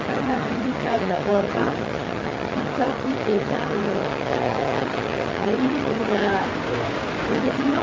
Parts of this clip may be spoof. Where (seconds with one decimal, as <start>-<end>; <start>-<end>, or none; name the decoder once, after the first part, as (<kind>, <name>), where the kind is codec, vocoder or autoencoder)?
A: 0.0-6.3 (vocoder, HiFi-GAN); 7.3-7.8

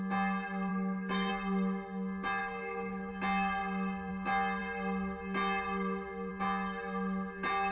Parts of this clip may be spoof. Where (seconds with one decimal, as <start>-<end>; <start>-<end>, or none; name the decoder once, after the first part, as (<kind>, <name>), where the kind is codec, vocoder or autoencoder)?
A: 0.7-1.3 (codec, DAC); 2.4-3.1